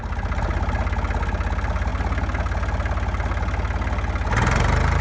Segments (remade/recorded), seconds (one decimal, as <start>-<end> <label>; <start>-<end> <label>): 0.0-5.0 recorded